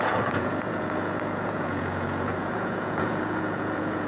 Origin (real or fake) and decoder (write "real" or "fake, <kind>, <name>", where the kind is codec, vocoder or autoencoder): fake, vocoder, Vocos